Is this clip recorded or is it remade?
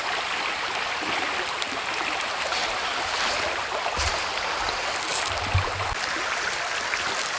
recorded